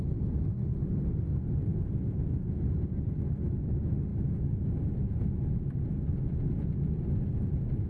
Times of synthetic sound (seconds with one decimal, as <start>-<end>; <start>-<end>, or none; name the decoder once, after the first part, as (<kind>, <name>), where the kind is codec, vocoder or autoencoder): 0.6-1.1 (codec, HILCodec)